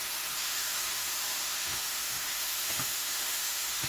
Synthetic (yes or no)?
yes